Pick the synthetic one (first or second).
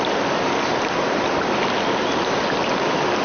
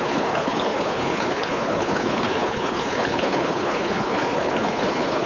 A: second